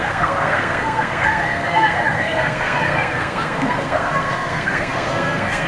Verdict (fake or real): fake